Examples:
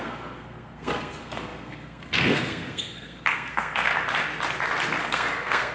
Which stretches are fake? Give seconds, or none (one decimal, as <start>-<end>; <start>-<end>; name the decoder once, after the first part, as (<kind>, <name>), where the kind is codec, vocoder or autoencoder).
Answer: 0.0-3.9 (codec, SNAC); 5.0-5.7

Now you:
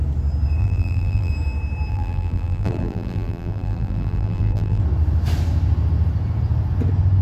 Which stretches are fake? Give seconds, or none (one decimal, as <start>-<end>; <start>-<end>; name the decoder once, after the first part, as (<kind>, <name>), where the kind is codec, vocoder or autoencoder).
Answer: 0.6-1.3 (vocoder, BigVGAN v2); 1.9-4.8

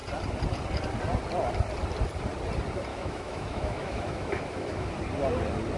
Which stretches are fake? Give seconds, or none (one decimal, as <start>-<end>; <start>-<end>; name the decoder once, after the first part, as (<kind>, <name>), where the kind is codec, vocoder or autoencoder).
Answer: 2.9-4.9 (autoencoder, DAC-VAE)

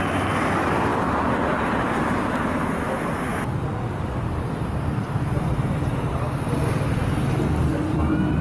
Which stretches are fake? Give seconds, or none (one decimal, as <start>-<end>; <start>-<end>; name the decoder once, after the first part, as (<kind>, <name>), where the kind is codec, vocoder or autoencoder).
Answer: none